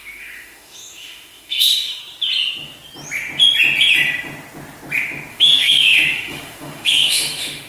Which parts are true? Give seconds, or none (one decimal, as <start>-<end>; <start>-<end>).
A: 2.0-5.3